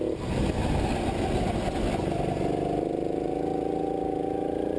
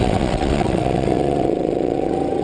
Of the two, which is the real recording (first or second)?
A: first